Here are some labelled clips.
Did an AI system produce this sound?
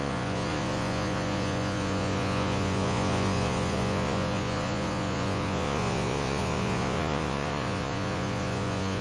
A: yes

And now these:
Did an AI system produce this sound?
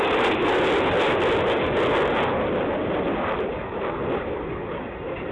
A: no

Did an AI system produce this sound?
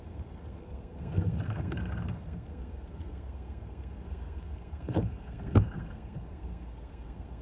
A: yes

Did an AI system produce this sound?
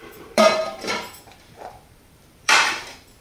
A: yes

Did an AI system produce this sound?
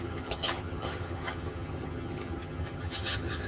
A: yes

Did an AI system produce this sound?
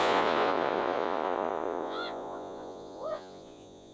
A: yes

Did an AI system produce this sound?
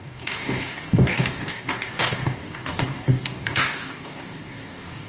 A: yes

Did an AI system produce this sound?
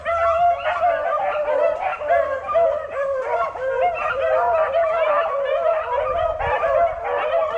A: no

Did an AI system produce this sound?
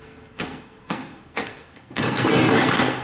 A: yes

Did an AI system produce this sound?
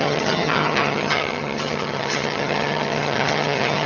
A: yes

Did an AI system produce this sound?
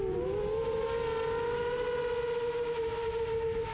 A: no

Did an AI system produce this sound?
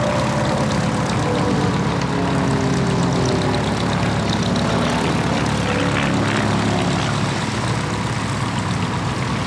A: no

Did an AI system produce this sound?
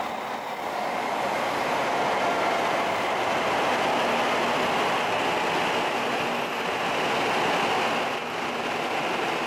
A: no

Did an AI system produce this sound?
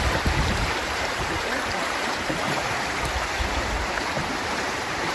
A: yes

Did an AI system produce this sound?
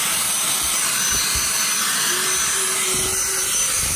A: no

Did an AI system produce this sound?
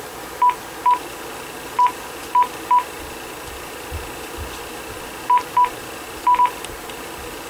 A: no